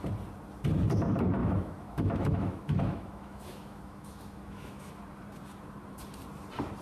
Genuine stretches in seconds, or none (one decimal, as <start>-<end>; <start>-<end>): 0.0-1.4; 4.9-6.8